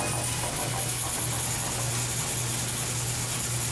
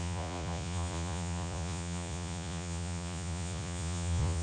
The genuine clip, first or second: first